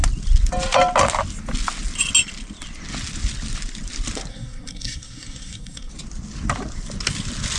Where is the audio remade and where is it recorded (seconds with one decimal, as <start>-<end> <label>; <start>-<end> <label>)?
0.0-4.3 recorded; 4.3-5.9 remade; 5.9-7.6 recorded